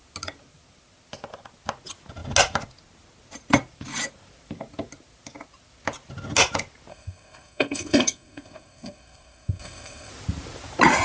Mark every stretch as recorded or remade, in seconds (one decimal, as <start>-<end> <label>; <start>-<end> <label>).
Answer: 0.0-6.9 recorded; 6.9-10.1 remade; 10.1-11.0 recorded